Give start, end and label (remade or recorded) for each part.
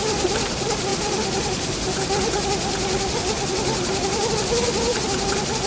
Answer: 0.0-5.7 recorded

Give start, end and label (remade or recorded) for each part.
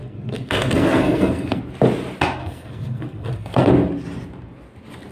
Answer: 0.0-1.6 remade; 1.6-2.4 recorded; 2.4-3.7 remade; 3.7-5.1 recorded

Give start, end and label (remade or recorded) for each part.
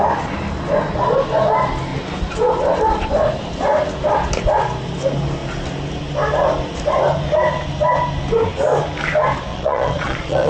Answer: 0.0-9.5 recorded; 9.5-10.5 remade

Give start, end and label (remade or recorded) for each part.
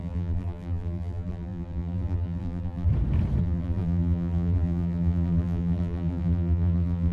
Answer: 0.0-2.9 remade; 2.9-3.4 recorded; 3.4-7.1 remade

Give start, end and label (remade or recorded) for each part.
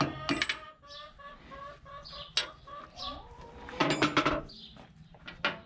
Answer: 0.0-5.7 recorded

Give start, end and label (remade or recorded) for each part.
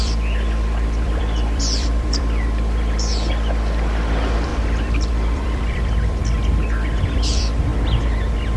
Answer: 0.0-6.2 remade; 6.2-7.0 recorded; 7.0-7.7 remade; 7.7-8.6 recorded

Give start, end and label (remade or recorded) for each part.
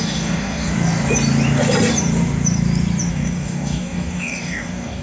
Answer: 0.0-0.7 remade; 0.7-3.1 recorded; 3.1-5.0 remade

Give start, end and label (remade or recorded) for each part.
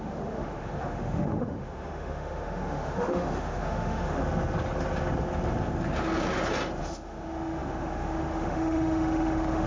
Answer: 0.0-4.2 remade; 4.2-6.8 recorded; 6.8-9.7 remade